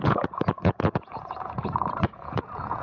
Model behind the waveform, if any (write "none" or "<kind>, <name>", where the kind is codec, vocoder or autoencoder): vocoder, Vocos